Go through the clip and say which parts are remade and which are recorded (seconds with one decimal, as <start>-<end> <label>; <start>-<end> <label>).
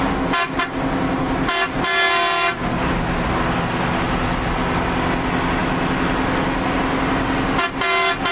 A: 0.0-8.3 recorded